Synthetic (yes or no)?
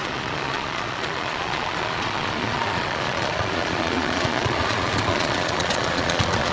yes